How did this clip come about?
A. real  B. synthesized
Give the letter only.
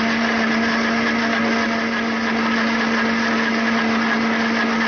A